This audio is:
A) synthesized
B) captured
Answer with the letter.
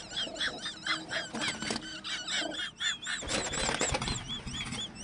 B